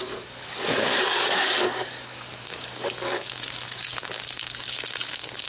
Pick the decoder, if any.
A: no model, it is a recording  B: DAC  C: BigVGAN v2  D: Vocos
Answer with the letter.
B